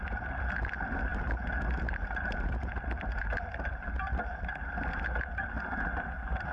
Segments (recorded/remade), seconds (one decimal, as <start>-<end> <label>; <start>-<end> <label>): 0.0-6.5 recorded